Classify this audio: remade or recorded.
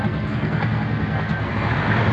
remade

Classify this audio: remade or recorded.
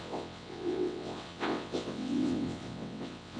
remade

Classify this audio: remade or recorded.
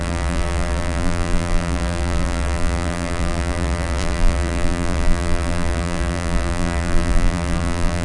remade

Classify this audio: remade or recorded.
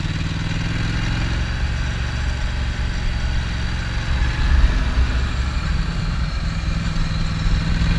recorded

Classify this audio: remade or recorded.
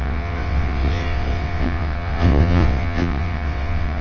remade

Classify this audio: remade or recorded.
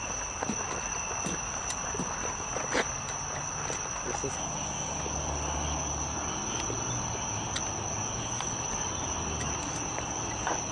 recorded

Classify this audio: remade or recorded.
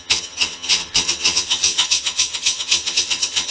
remade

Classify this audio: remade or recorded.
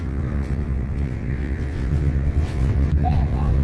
remade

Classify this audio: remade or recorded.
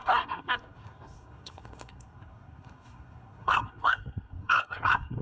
remade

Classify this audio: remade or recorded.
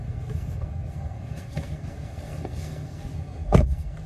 remade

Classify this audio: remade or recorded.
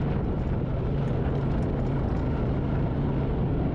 recorded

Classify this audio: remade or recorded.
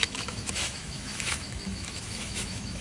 remade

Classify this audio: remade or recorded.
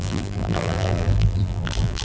remade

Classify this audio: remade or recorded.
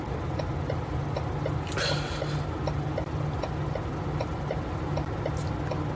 recorded